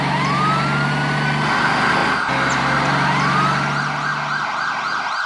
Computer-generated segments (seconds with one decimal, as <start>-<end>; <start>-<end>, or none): none